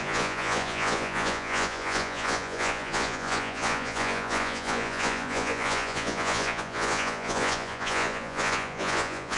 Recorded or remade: remade